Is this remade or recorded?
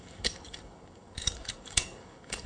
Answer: remade